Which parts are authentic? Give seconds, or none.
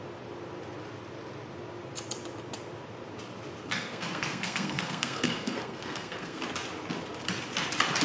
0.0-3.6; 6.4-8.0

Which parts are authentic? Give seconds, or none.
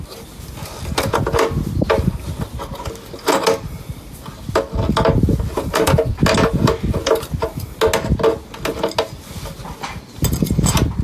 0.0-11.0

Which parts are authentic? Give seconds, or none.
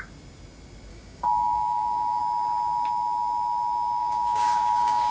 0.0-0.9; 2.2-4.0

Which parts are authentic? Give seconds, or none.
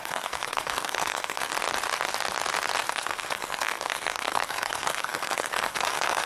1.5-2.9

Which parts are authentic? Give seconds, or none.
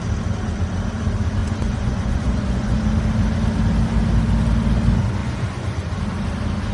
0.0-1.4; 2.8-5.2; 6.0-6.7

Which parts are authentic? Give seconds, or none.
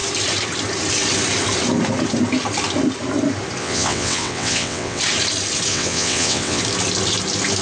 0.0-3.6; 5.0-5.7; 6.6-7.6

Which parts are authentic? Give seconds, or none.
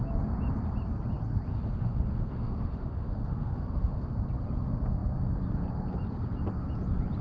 0.0-1.5; 4.1-7.2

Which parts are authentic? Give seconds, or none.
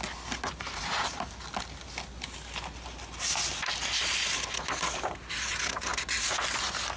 0.0-7.0